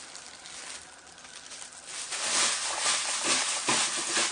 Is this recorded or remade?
recorded